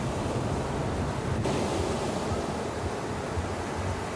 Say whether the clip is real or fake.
real